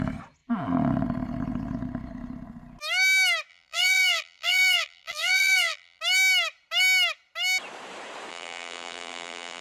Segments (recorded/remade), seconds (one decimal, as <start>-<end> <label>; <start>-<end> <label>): 0.0-3.5 recorded; 3.5-6.0 remade; 6.0-8.3 recorded; 8.3-9.6 remade